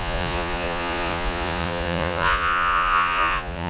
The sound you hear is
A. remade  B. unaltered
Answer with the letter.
A